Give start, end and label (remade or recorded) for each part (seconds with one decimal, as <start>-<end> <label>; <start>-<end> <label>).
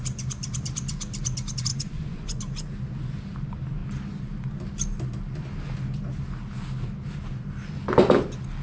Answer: 0.0-1.7 recorded; 1.7-2.4 remade; 2.4-8.6 recorded